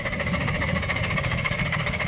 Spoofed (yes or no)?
yes